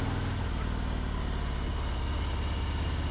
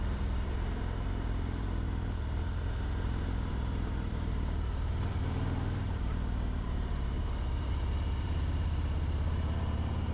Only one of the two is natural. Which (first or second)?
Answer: first